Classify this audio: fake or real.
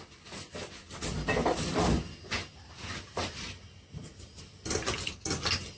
real